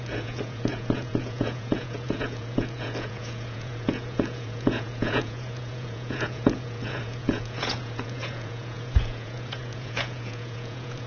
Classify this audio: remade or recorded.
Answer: remade